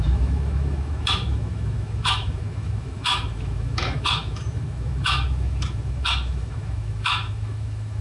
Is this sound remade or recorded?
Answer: remade